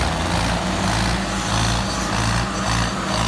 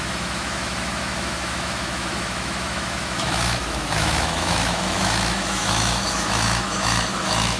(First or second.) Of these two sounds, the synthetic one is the second